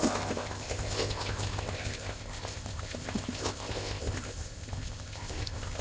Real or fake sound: fake